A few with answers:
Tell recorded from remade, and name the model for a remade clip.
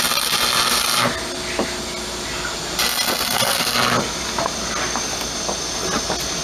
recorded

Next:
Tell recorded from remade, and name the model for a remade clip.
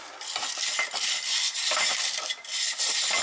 recorded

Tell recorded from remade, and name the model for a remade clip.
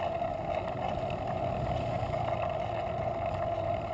recorded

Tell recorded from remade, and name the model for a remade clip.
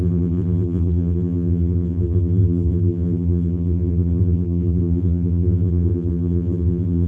remade, vocoder, BigVGAN v2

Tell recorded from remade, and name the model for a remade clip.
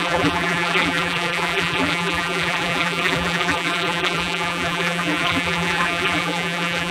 remade, vocoder, BigVGAN v2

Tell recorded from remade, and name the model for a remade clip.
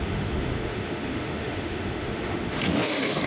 remade, autoencoder, DAC-VAE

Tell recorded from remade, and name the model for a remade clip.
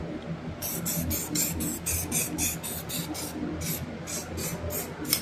recorded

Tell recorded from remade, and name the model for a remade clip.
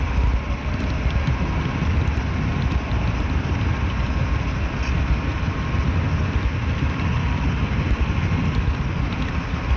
recorded